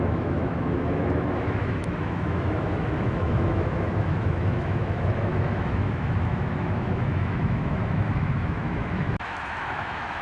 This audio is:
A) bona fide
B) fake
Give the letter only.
B